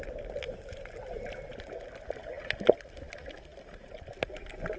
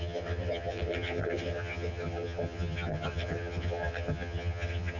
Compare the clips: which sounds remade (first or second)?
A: second